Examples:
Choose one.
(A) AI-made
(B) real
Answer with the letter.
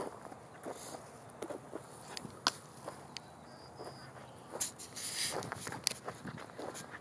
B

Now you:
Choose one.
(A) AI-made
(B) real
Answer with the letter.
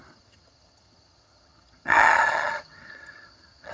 A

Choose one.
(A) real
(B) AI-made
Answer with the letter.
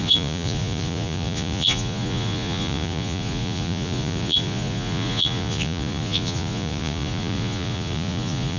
B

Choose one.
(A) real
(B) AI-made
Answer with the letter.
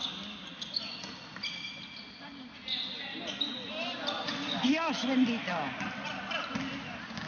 A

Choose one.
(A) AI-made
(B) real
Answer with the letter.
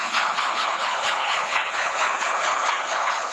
A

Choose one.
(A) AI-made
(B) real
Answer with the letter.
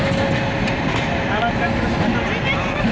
B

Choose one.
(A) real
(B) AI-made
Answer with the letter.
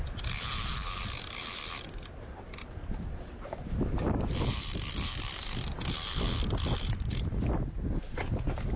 B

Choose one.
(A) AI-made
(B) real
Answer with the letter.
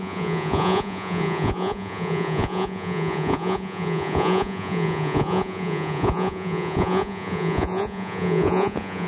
A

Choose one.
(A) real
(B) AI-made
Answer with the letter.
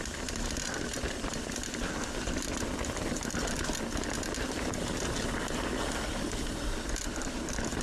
A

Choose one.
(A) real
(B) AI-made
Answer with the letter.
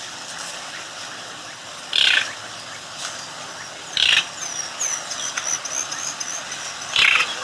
A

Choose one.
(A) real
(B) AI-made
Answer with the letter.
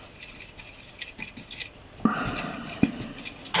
A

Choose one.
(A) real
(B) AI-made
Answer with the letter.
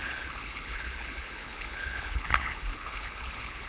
B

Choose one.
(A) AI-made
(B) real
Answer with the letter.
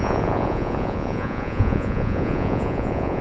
A